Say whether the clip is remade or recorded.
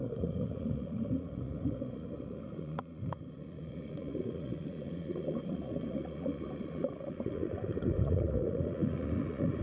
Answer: remade